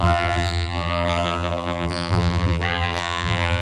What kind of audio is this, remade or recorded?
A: remade